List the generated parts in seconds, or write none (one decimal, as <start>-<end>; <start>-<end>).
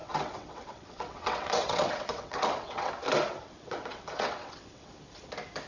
0.0-2.9; 3.4-4.9